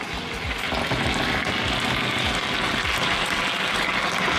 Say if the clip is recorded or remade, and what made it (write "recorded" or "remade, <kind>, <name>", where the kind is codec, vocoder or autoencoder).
recorded